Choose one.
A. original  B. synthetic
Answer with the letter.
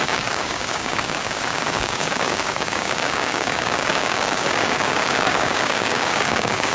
B